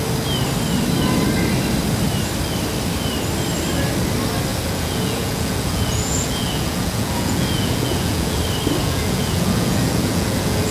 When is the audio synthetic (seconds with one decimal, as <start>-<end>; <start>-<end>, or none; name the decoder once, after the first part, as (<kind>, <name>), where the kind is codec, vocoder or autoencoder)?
4.5-8.4 (vocoder, Vocos); 8.8-10.7